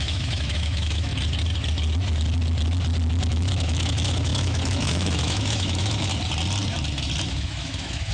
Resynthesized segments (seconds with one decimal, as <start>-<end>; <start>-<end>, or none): 0.0-1.1; 3.2-6.1; 7.2-8.1